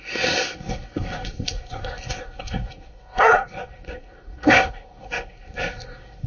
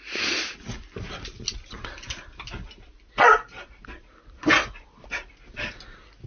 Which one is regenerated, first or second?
first